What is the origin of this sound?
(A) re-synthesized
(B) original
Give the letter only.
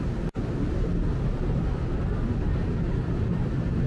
B